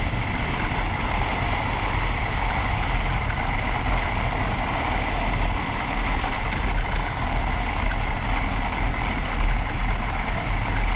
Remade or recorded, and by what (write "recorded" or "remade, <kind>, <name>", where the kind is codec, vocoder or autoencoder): recorded